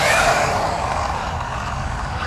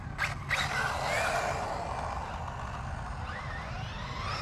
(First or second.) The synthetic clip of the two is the first